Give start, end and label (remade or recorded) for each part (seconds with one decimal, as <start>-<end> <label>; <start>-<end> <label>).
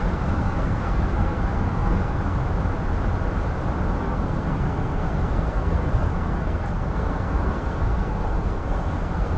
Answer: 0.0-2.4 remade; 2.4-4.0 recorded; 4.0-9.4 remade